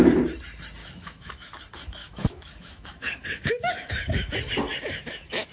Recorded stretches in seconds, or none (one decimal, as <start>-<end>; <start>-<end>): 0.0-0.8; 1.6-2.0; 4.3-4.7